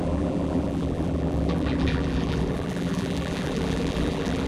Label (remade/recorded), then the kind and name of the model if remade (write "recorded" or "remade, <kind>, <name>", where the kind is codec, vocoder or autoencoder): remade, vocoder, BigVGAN v2